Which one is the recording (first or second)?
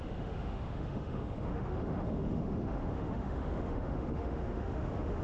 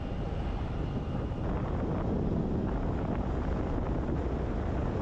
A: second